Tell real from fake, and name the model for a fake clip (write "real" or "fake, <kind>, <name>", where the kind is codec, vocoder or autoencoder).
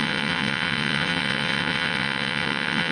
fake, vocoder, WaveNeXt